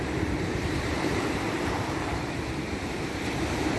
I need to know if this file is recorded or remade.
remade